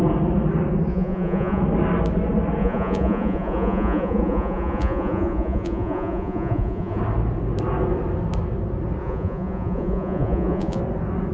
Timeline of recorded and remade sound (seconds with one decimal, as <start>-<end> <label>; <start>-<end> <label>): 0.0-0.9 recorded; 0.9-1.6 remade; 1.6-2.6 recorded; 2.6-7.0 remade; 7.0-9.0 recorded; 9.0-10.8 remade; 10.8-11.3 recorded